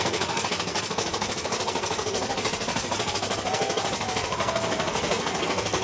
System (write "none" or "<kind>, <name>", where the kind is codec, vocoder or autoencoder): codec, SNAC